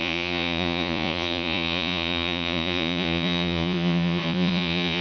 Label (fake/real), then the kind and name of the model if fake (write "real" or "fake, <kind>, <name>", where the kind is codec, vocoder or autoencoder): fake, vocoder, Vocos